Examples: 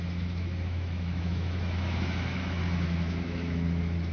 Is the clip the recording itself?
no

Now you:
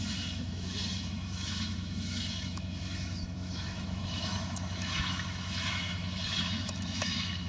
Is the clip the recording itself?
no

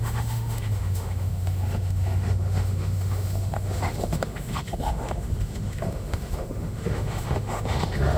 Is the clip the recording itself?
no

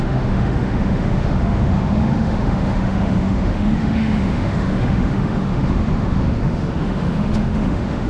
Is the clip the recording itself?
no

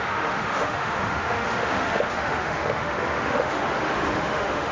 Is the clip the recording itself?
no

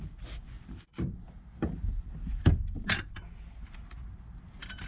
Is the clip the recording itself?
yes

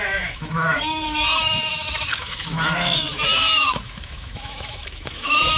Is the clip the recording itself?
no